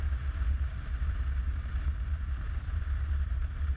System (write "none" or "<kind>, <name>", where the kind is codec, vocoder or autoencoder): none